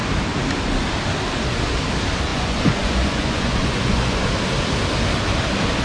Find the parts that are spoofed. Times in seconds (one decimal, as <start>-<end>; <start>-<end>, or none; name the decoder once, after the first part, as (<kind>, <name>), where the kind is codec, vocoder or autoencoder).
2.3-4.3 (vocoder, Vocos)